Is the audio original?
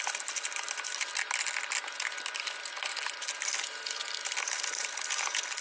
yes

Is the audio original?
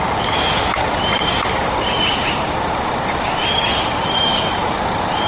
no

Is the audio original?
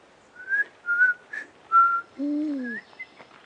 yes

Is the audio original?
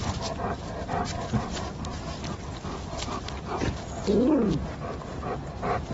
yes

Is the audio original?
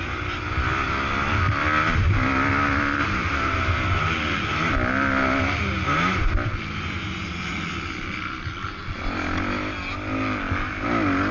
yes